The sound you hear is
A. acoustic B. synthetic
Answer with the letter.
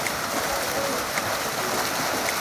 A